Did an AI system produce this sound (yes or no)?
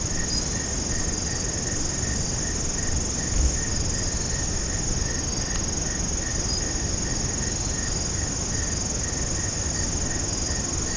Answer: no